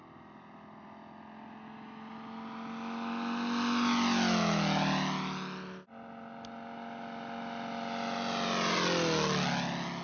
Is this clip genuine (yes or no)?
yes